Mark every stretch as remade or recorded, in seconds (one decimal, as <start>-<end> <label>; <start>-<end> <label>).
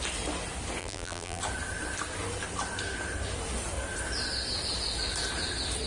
0.0-0.8 recorded; 0.8-1.4 remade; 1.4-5.9 recorded